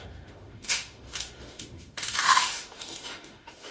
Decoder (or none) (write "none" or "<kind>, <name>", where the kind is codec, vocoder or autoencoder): autoencoder, DAC-VAE